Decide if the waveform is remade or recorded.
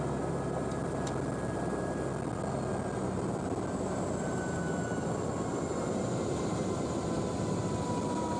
recorded